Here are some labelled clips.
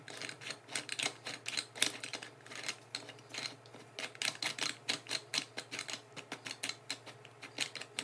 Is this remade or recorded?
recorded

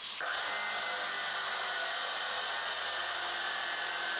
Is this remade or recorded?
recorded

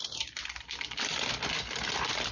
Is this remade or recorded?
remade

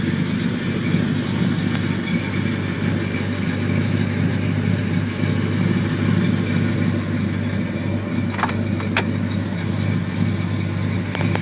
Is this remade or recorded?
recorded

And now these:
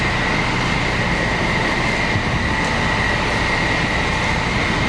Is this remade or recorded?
recorded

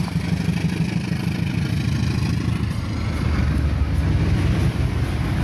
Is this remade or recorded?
recorded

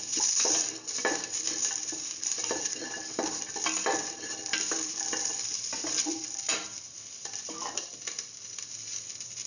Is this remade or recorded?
remade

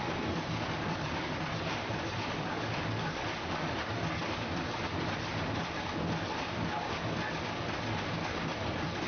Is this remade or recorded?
remade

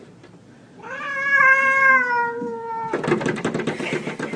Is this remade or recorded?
recorded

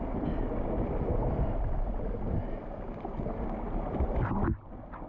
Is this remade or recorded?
recorded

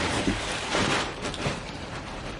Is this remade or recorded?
remade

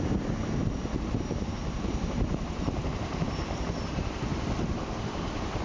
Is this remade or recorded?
remade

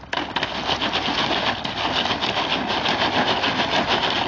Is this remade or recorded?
recorded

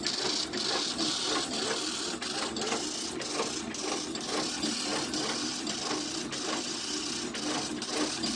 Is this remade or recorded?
recorded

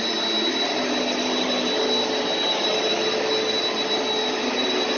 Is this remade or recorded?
recorded